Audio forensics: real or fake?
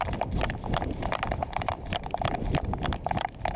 real